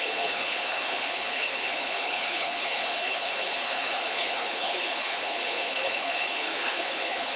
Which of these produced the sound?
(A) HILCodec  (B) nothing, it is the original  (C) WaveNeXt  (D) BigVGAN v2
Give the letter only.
A